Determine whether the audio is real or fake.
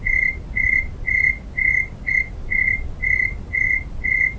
real